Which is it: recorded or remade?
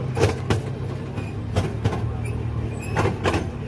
recorded